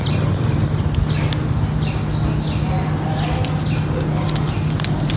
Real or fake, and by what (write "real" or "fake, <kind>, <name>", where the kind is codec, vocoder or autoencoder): real